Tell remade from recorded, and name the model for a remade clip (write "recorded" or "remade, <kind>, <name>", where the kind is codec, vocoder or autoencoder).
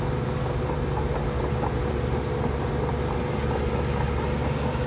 recorded